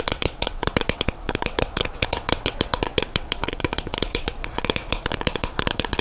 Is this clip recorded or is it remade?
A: remade